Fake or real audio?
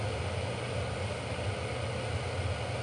real